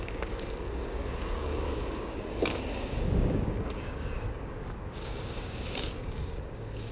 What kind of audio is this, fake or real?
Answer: fake